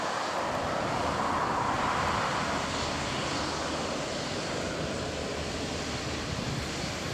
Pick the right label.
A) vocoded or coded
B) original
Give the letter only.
B